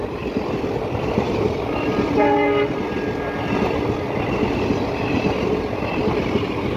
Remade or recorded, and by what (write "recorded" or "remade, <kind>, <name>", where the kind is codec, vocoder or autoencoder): recorded